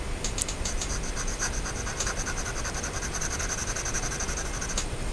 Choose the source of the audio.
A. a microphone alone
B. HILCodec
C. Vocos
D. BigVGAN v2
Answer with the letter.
A